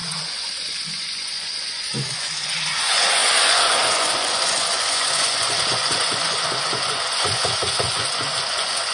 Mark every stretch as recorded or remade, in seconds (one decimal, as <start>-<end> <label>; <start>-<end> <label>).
0.0-8.9 remade